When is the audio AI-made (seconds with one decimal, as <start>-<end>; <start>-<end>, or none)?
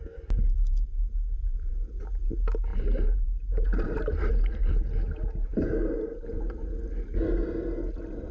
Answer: 1.5-2.0; 2.7-4.7; 5.5-6.5